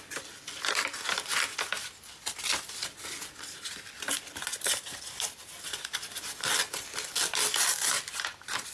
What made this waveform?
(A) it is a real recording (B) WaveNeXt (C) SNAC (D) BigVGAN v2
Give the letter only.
D